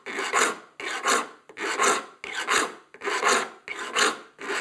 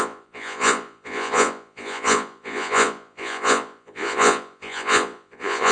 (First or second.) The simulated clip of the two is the second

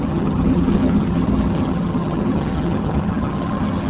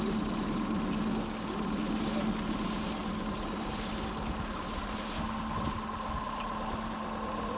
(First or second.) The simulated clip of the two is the first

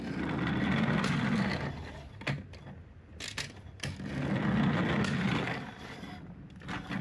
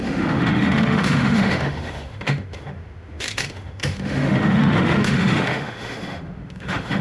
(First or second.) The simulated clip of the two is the second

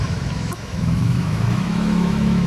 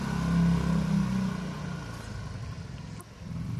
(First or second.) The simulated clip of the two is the first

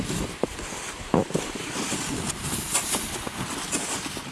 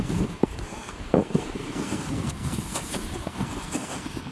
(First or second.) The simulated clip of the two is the second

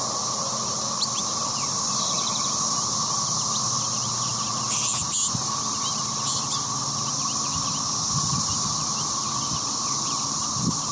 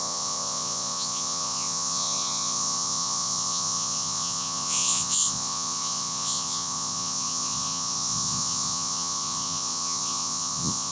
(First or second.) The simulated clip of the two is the second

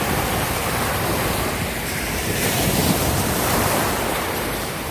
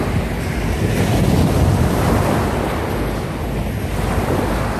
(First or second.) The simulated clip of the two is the first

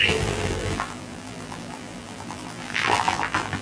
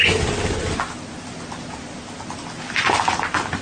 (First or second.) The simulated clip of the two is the first